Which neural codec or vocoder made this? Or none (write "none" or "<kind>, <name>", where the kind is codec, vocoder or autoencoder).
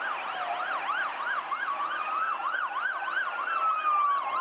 none